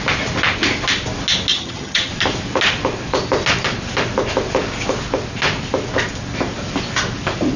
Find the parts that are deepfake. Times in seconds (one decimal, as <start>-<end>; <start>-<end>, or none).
1.5-2.1